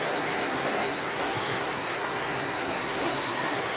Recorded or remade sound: remade